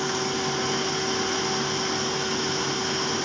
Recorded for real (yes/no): yes